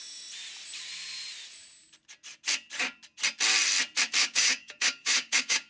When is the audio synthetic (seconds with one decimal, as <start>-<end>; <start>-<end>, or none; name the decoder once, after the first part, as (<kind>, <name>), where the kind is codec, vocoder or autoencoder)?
4.2-5.7 (codec, DAC)